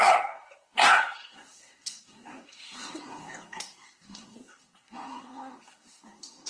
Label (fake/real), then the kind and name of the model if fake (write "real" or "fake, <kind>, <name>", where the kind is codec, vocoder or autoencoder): fake, codec, SNAC